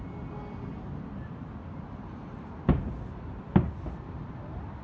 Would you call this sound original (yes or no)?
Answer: yes